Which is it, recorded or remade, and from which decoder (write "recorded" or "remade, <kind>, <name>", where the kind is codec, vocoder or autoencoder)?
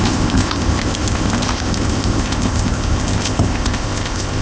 remade, codec, ZipCodec